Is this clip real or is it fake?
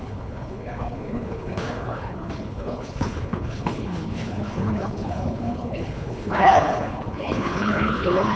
fake